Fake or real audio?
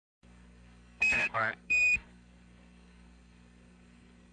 fake